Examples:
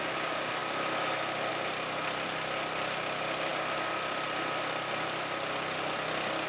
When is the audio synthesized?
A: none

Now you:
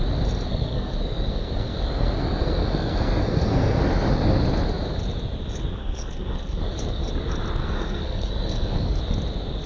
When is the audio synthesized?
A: 0.5-3.8 (codec, SNAC); 5.8-7.0; 7.6-9.0

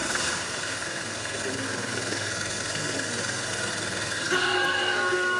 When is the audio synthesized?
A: 0.0-5.4 (codec, SNAC)

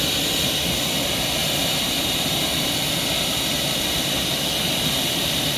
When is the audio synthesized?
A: 1.4-4.8 (vocoder, BigVGAN v2)

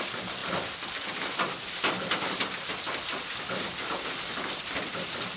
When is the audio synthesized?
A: none